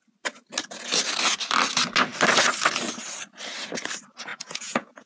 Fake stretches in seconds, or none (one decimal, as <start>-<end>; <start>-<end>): 4.3-5.1